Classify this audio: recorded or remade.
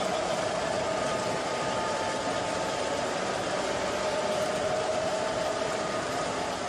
remade